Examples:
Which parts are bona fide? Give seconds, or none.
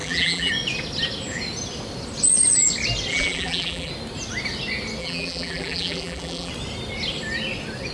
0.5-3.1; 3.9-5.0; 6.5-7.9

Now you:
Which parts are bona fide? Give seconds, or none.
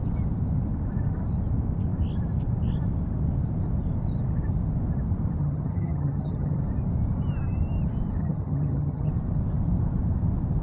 0.0-5.4; 6.6-8.2; 9.1-10.6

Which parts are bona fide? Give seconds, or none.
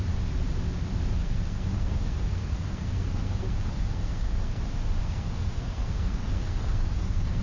0.0-1.2; 4.6-5.0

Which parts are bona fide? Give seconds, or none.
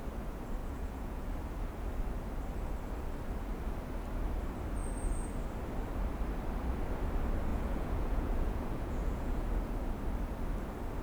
0.0-0.6; 1.3-7.5; 9.7-11.0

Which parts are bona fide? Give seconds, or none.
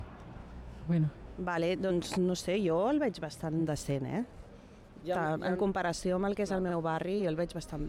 0.0-0.4; 1.9-6.7; 7.2-7.9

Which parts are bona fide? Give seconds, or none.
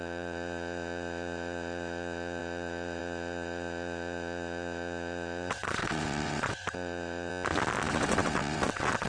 7.3-7.9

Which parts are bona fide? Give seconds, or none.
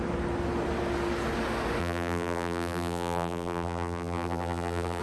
0.0-1.8